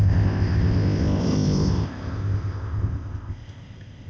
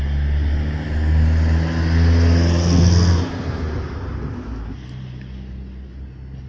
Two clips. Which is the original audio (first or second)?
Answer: second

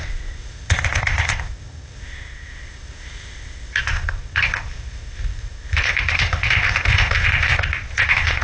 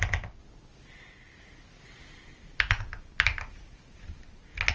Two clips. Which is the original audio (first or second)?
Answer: second